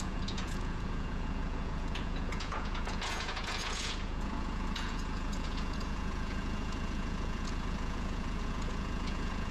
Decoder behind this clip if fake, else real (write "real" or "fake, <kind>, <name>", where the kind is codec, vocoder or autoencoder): fake, vocoder, Vocos